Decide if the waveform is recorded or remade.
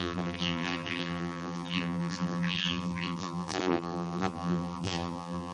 remade